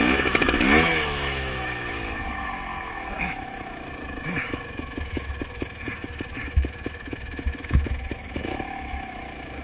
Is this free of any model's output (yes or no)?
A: no